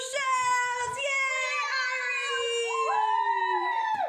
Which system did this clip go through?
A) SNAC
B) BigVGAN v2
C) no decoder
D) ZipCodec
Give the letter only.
C